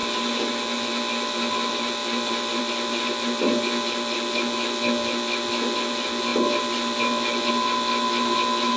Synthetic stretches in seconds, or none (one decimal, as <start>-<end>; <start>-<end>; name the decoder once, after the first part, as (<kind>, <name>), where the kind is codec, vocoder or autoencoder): none

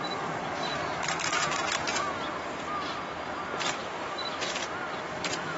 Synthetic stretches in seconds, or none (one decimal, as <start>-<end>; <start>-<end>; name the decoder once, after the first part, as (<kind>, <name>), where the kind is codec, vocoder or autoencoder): 0.7-2.0 (vocoder, BigVGAN v2); 3.8-4.8

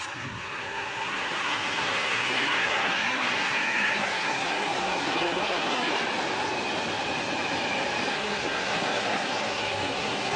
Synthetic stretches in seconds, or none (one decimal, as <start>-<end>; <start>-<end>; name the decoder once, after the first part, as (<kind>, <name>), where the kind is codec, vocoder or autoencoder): 0.0-5.9 (codec, SNAC); 8.1-10.4

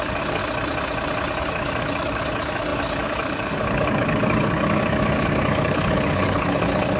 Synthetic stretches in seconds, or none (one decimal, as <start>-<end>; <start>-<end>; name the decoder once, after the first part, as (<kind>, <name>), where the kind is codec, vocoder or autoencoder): 0.0-0.4 (codec, DAC); 1.4-7.0

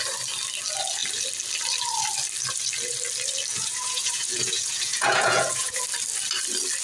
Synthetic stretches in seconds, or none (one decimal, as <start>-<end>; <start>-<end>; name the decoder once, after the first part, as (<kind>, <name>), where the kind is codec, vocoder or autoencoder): 3.5-5.8 (vocoder, Vocos)